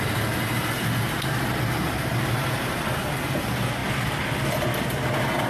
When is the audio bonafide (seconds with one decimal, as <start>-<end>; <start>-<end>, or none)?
0.0-2.1; 2.8-5.5